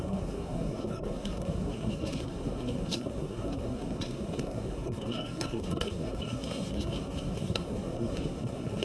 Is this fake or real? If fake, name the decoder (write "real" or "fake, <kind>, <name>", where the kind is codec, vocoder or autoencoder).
fake, codec, SNAC